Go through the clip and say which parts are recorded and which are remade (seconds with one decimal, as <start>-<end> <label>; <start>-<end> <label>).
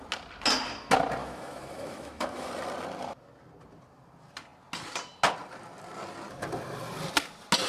0.0-1.2 recorded; 1.2-2.5 remade; 2.5-7.7 recorded